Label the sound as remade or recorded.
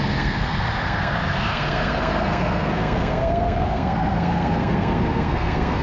remade